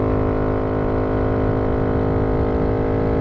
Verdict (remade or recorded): recorded